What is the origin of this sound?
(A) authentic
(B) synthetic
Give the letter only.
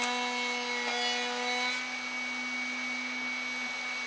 A